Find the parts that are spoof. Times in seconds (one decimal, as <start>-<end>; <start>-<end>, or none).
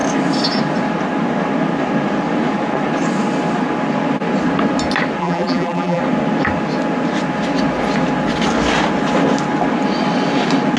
5.2-6.0